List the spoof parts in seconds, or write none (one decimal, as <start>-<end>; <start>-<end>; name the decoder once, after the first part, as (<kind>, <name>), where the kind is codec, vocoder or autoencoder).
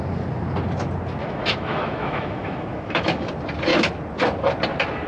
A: 1.2-3.3 (autoencoder, DAC-VAE)